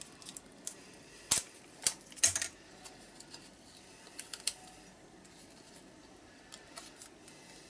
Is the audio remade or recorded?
recorded